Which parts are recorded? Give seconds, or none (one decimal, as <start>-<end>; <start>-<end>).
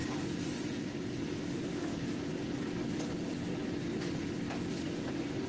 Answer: 3.6-4.8